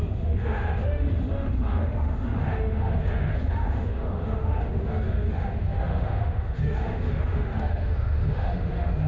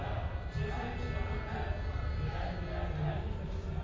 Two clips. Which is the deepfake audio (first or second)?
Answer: first